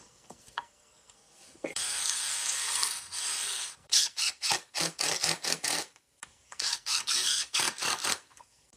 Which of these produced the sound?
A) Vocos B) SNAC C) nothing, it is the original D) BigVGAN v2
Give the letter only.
B